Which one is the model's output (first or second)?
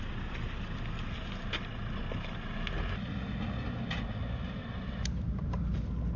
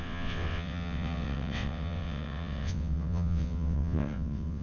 second